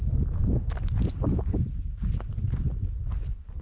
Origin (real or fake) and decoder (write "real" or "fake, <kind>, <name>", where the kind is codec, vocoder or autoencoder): real